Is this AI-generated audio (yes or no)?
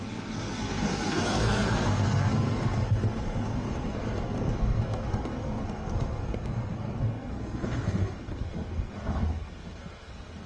yes